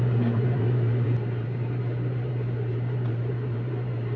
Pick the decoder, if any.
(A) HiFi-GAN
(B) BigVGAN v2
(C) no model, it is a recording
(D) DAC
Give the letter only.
B